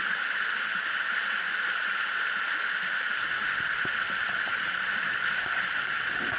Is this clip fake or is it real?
real